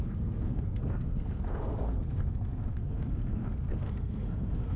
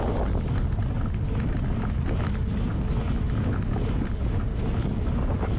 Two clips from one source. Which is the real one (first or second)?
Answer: second